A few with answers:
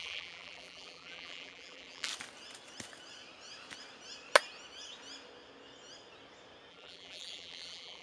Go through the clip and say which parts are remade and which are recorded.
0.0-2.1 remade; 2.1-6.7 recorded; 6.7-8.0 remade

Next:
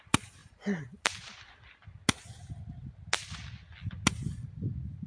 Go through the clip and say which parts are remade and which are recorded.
0.0-2.0 remade; 2.0-5.1 recorded

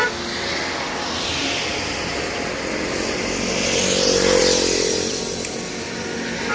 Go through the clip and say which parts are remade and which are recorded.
0.0-1.7 recorded; 1.7-3.2 remade; 3.2-4.4 recorded; 4.4-5.1 remade; 5.1-6.5 recorded

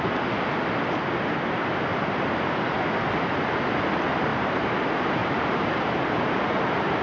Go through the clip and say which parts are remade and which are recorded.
0.0-1.9 recorded; 1.9-2.5 remade; 2.5-4.3 recorded; 4.3-4.8 remade; 4.8-5.2 recorded; 5.2-5.9 remade; 5.9-7.0 recorded

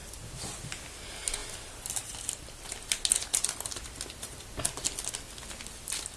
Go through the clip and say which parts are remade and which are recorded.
0.0-0.6 remade; 0.6-1.4 recorded; 1.4-5.1 remade; 5.1-6.2 recorded

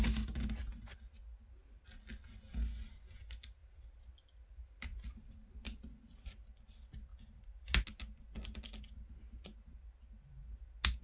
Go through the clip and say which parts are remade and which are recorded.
0.0-3.6 recorded; 3.6-4.1 remade; 4.1-4.6 recorded; 4.6-5.5 remade; 5.5-11.0 recorded

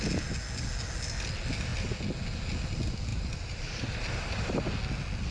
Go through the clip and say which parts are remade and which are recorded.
0.0-3.1 recorded; 3.1-4.7 remade; 4.7-5.3 recorded

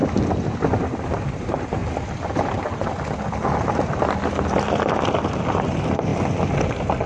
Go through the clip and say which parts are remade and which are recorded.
0.0-1.2 recorded; 1.2-1.8 remade; 1.8-5.1 recorded; 5.1-6.1 remade; 6.1-7.1 recorded